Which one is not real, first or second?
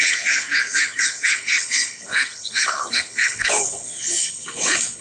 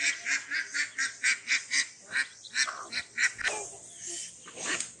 first